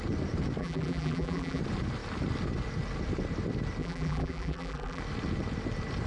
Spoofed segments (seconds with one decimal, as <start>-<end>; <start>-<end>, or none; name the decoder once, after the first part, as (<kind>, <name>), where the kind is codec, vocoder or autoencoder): 0.6-1.6 (vocoder, BigVGAN v2); 3.8-5.0